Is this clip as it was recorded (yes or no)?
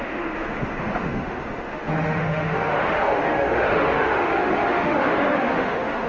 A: no